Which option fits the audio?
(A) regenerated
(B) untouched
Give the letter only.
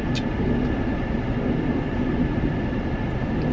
B